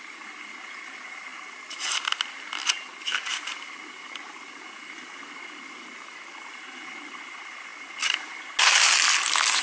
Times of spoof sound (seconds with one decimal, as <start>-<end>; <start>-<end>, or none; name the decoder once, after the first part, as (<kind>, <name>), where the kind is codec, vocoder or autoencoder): none